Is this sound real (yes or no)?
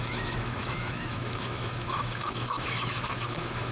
no